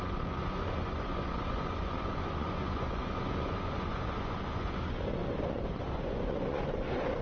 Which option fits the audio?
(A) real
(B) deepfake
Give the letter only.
B